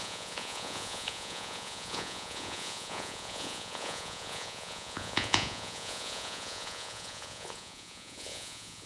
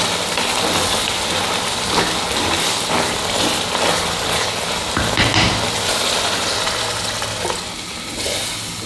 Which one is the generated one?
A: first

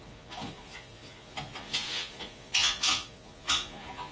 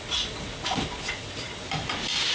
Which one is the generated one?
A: first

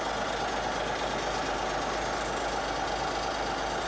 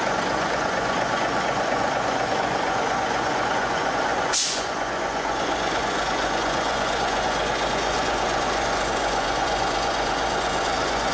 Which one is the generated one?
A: second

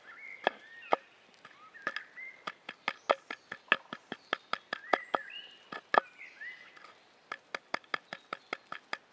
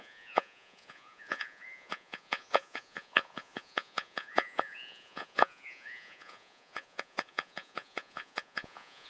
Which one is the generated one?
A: second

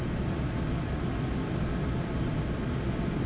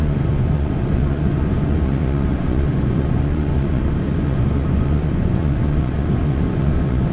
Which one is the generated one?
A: second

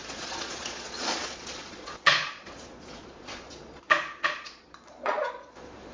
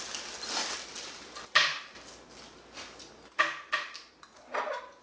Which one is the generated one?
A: first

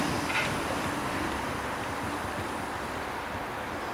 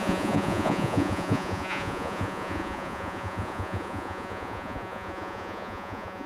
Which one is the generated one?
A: second